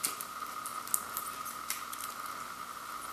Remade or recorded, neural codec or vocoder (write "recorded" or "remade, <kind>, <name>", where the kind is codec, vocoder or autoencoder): recorded